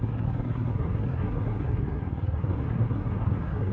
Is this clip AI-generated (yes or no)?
yes